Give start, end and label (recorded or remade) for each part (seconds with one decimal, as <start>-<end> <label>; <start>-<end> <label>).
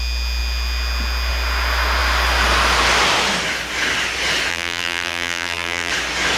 0.0-4.5 recorded; 4.5-5.9 remade; 5.9-6.4 recorded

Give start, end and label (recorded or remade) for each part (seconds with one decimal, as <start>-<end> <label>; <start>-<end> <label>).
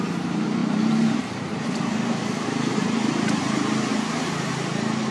0.0-0.6 recorded; 0.6-3.4 remade; 3.4-3.9 recorded; 3.9-4.5 remade; 4.5-5.1 recorded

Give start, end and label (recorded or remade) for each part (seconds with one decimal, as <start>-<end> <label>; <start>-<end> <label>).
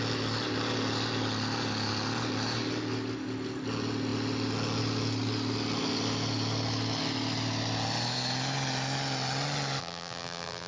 0.0-9.8 recorded; 9.8-10.7 remade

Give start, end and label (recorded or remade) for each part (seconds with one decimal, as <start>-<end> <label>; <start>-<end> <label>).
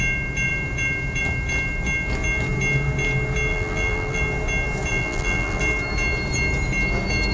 0.0-3.5 recorded; 3.5-4.2 remade; 4.2-4.9 recorded; 4.9-5.6 remade; 5.6-7.3 recorded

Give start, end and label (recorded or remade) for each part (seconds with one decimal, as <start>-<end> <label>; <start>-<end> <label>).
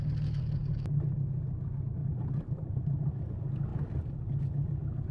0.0-2.0 recorded; 2.0-3.3 remade; 3.3-3.7 recorded; 3.7-4.4 remade; 4.4-5.1 recorded